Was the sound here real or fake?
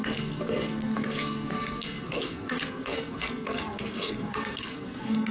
fake